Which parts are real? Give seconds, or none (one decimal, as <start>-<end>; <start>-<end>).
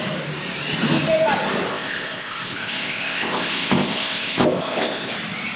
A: 0.0-1.7; 5.1-5.6